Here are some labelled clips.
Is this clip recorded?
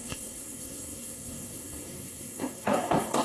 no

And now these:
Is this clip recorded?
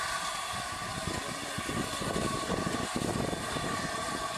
yes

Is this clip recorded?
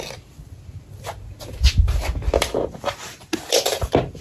yes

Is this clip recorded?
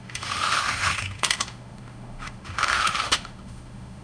no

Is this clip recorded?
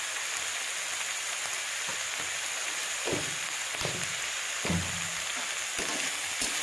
yes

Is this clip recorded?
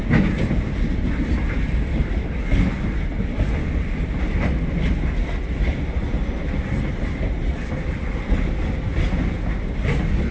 yes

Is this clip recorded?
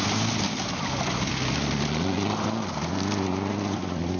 yes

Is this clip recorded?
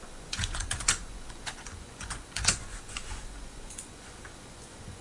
no